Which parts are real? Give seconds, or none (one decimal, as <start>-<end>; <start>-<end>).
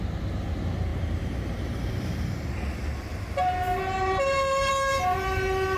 0.0-0.9; 2.5-4.0; 4.7-5.8